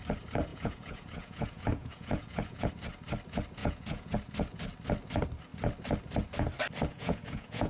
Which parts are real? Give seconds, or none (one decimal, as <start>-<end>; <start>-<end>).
0.0-0.5; 2.7-3.6; 4.1-6.9